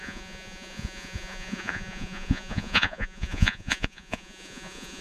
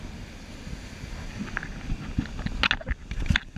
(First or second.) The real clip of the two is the second